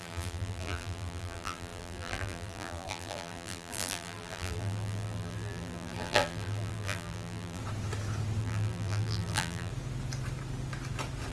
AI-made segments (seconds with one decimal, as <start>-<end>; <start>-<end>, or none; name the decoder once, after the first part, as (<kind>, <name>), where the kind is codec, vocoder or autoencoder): 0.0-7.6 (vocoder, BigVGAN v2); 8.4-9.7